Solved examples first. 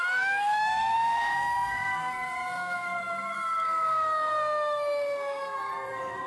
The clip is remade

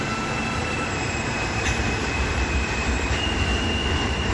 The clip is remade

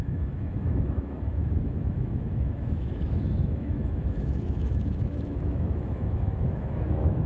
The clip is remade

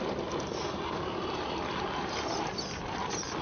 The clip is recorded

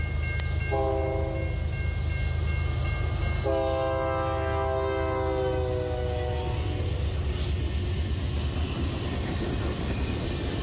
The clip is recorded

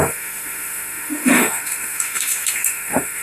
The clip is remade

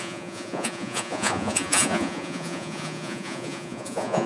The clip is remade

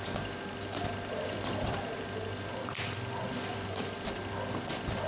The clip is recorded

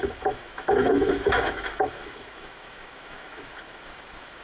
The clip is remade